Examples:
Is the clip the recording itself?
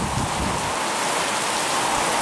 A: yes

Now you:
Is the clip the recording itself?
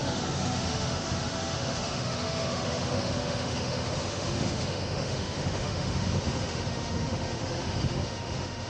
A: no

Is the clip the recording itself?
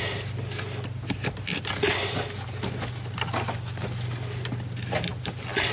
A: yes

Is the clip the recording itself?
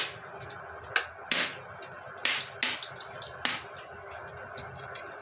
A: yes